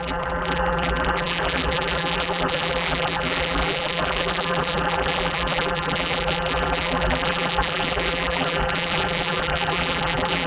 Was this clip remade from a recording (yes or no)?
yes